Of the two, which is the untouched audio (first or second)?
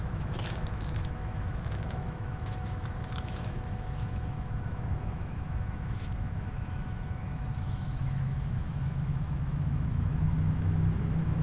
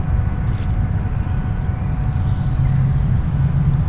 second